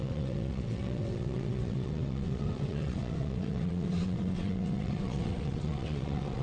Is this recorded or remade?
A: remade